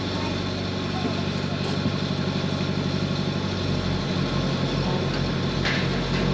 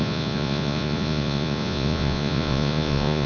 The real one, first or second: first